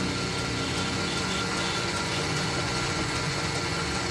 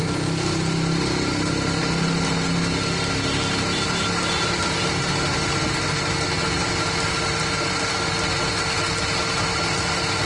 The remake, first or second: first